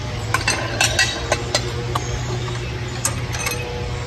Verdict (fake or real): real